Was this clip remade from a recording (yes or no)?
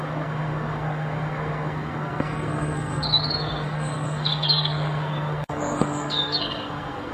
yes